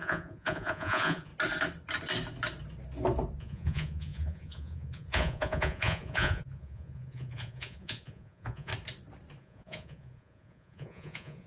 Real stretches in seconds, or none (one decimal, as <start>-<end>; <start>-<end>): 1.3-3.4; 8.7-9.4